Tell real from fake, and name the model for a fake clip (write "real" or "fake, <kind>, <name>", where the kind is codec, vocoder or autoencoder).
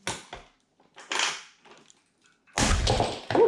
real